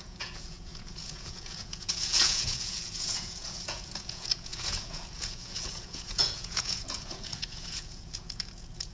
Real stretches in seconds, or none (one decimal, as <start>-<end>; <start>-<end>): none